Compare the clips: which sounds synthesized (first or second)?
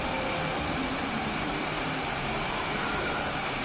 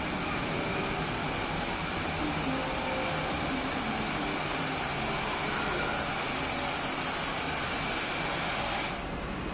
first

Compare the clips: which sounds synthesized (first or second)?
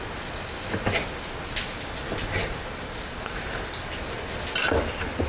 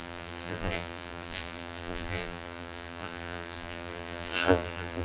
second